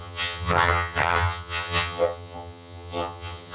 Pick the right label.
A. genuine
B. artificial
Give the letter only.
B